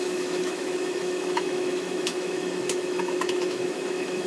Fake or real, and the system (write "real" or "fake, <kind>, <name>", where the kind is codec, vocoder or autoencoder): fake, autoencoder, DAC-VAE